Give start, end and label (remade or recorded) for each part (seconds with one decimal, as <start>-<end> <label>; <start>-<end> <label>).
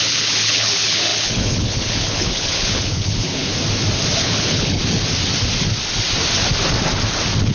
0.0-3.5 remade; 3.5-4.2 recorded; 4.2-4.8 remade; 4.8-7.5 recorded